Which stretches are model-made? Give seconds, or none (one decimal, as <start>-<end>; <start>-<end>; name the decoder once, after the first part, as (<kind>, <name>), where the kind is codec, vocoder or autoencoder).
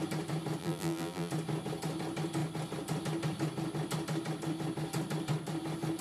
0.6-1.3 (vocoder, BigVGAN v2)